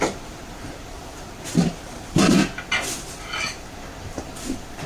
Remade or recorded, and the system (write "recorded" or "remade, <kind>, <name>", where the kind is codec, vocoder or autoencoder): recorded